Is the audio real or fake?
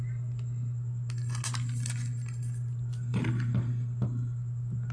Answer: real